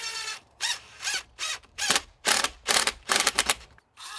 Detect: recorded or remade remade